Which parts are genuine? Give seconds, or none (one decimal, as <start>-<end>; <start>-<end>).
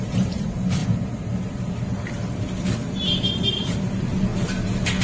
0.8-3.8; 4.3-5.0